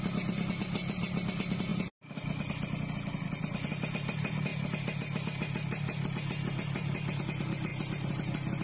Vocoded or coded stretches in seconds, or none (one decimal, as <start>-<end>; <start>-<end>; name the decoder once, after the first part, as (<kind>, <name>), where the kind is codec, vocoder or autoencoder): none